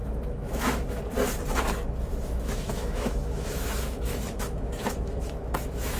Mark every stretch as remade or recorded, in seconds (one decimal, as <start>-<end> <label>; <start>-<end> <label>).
0.0-1.0 remade; 1.0-2.1 recorded; 2.1-6.0 remade